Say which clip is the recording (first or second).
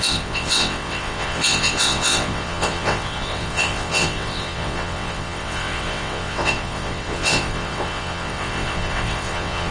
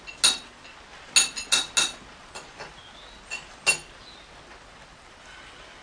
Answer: second